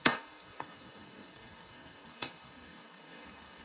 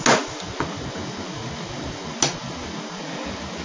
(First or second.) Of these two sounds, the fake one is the first